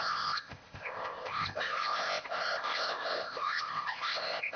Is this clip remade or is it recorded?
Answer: remade